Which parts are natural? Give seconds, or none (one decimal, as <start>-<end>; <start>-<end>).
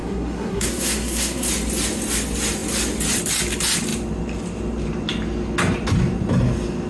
1.5-6.9